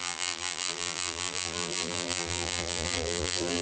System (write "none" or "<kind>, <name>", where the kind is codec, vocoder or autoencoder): vocoder, BigVGAN v2